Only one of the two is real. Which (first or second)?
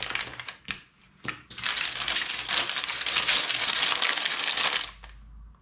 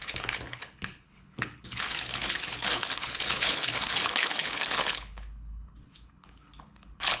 first